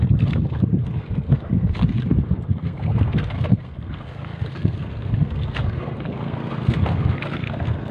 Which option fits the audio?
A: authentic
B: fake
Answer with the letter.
B